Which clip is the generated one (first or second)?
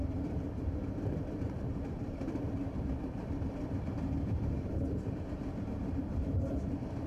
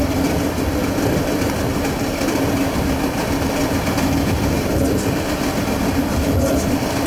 first